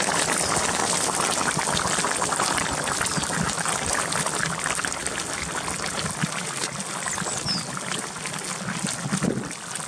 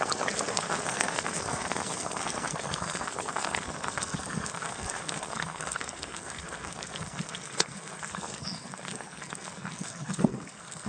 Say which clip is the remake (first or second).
second